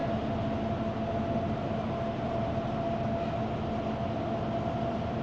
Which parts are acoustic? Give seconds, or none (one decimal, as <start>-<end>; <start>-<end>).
0.0-5.2

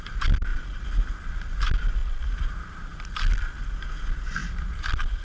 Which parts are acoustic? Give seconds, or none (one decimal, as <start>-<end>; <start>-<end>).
0.0-2.0; 3.8-4.4

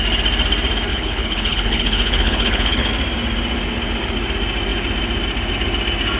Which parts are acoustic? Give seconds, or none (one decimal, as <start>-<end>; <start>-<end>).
0.0-0.9; 2.9-6.2